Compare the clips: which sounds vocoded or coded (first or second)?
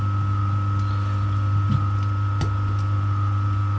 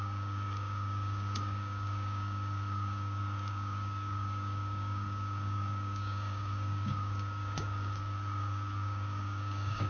second